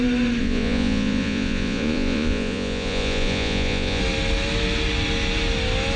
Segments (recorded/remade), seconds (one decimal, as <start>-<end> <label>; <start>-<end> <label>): 0.0-0.4 recorded; 0.4-4.0 remade; 4.0-6.0 recorded